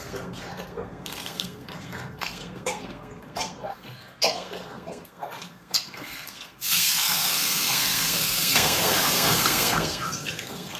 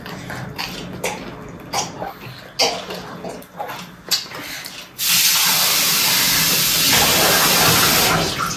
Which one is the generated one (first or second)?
first